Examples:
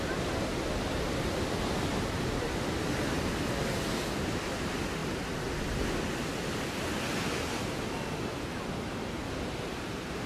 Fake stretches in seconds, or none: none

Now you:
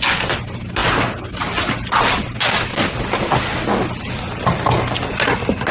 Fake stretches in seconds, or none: none

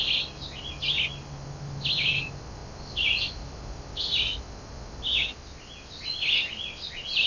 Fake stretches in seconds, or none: none

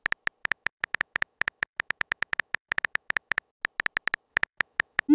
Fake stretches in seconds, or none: 0.4-3.5 (autoencoder, DAC-VAE); 4.3-5.1

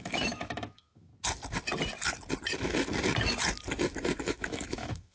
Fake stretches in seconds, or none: 0.0-1.1 (autoencoder, DAC-VAE); 4.2-5.1

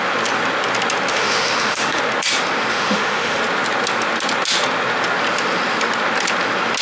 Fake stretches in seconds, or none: 1.1-2.0 (autoencoder, DAC-VAE); 2.7-3.4